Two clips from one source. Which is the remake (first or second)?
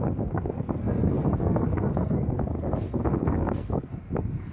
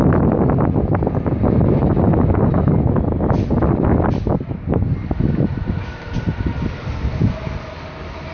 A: first